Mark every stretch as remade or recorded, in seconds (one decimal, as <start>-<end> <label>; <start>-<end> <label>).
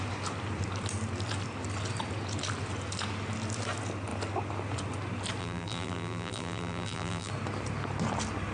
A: 0.0-5.4 recorded; 5.4-7.3 remade; 7.3-8.5 recorded